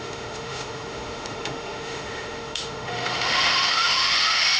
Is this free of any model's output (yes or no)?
no